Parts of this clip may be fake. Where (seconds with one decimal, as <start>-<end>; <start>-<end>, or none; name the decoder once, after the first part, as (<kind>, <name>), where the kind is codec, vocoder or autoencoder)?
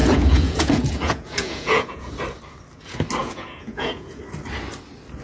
0.0-2.1 (vocoder, Vocos); 3.2-4.2